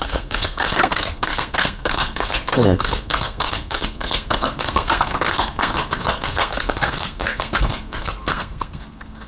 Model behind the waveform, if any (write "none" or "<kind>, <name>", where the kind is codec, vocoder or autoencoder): codec, SNAC